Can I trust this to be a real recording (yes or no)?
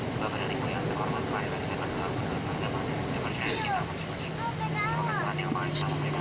yes